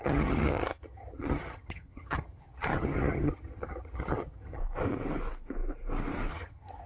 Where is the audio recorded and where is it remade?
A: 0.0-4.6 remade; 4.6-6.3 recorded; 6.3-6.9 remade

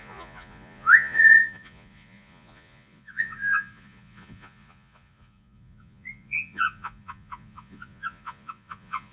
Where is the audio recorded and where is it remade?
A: 0.0-9.1 remade

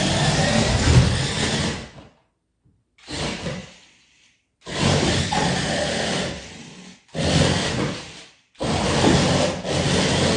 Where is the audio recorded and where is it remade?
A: 0.0-10.4 recorded

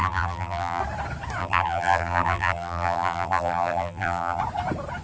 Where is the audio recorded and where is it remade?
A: 0.0-0.8 remade; 0.8-1.4 recorded; 1.4-4.4 remade; 4.4-5.0 recorded

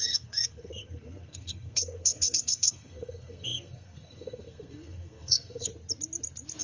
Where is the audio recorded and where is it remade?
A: 0.0-5.7 remade; 5.7-6.6 recorded

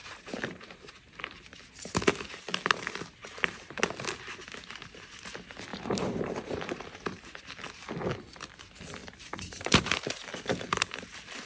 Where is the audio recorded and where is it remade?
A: 0.0-0.9 remade; 0.9-3.2 recorded; 3.2-3.8 remade; 3.8-5.7 recorded; 5.7-7.4 remade; 7.4-9.0 recorded; 9.0-9.9 remade; 9.9-11.5 recorded

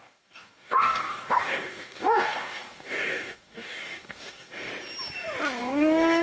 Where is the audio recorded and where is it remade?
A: 0.0-4.7 remade; 4.7-5.6 recorded; 5.6-6.2 remade